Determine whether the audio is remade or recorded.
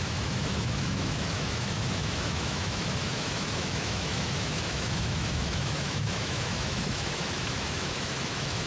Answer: remade